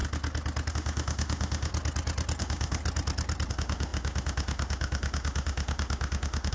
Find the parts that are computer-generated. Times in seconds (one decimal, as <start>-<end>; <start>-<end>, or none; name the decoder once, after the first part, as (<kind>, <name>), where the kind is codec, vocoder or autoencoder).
0.7-1.7 (autoencoder, DAC-VAE); 2.4-2.8; 3.5-6.5